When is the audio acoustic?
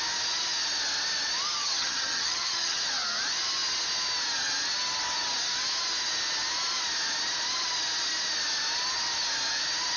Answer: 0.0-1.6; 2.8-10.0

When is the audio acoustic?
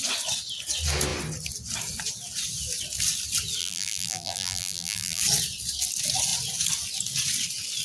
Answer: 0.0-3.6; 5.2-7.8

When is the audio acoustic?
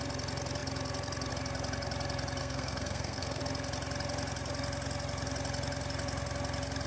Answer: 0.0-2.4; 3.4-6.9